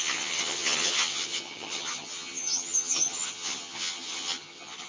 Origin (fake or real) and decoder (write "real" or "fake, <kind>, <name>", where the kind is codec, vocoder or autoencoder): fake, vocoder, HiFi-GAN